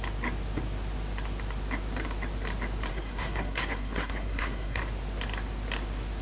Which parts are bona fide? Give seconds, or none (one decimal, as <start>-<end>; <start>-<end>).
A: 0.0-2.9; 4.8-6.2